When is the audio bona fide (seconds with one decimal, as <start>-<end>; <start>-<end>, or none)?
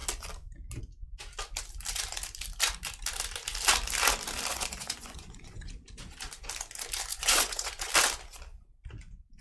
0.0-4.5; 5.8-7.1; 7.9-9.4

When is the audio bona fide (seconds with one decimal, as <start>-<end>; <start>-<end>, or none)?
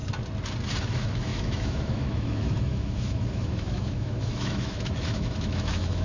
0.0-0.8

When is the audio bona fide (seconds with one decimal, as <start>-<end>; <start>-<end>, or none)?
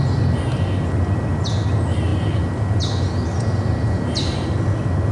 0.0-5.1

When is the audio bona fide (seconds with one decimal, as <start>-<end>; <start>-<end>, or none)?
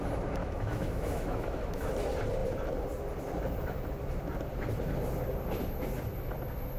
0.0-0.4; 1.9-6.8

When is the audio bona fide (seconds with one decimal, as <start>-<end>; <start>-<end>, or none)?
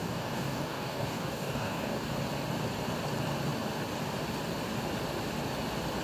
2.1-6.0